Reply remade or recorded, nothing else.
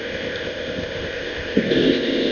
remade